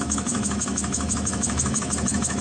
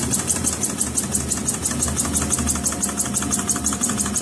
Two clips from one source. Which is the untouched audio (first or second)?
second